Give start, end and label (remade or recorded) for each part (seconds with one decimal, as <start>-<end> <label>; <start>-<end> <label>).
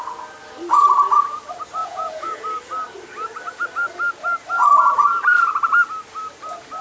0.0-1.8 recorded; 1.8-2.4 remade; 2.4-6.8 recorded